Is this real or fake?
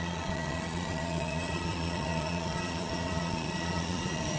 fake